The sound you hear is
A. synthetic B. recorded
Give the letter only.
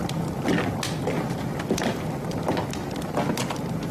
B